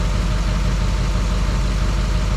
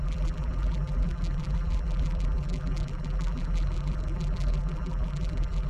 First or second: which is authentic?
first